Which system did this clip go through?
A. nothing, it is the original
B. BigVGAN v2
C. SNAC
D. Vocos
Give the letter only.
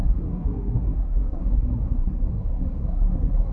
C